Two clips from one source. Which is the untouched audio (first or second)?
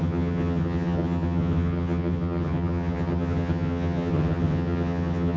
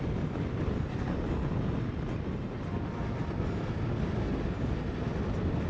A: second